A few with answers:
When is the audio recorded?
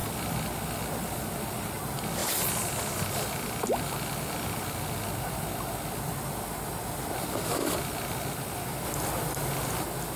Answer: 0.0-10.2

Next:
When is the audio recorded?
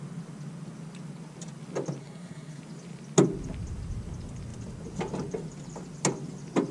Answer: 0.0-2.0; 2.6-6.7